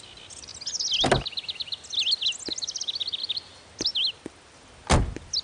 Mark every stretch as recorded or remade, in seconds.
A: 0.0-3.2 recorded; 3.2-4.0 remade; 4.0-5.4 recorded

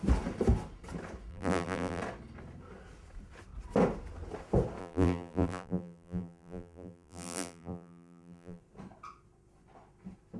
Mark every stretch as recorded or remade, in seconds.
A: 0.0-1.3 recorded; 1.3-2.0 remade; 2.0-4.8 recorded; 4.8-8.6 remade; 8.6-10.4 recorded

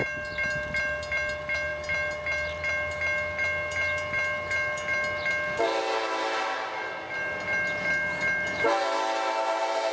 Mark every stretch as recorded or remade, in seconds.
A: 0.0-9.9 recorded

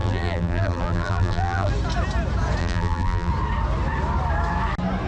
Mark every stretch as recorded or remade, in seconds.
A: 0.0-1.7 remade; 1.7-2.6 recorded; 2.6-3.3 remade; 3.3-5.1 recorded

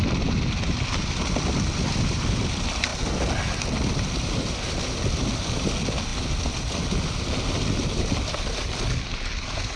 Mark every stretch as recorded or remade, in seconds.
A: 0.0-9.8 recorded

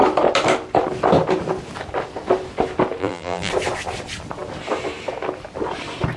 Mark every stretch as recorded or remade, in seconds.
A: 0.0-3.0 recorded; 3.0-3.5 remade; 3.5-6.2 recorded